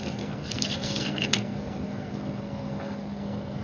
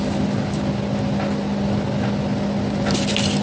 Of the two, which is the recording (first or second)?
second